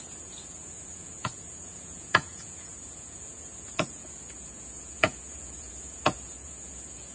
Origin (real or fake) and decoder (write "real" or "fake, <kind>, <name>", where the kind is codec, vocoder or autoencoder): fake, vocoder, Vocos